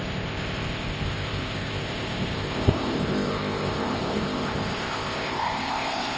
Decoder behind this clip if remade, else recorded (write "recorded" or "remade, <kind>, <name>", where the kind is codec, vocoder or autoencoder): remade, codec, ZipCodec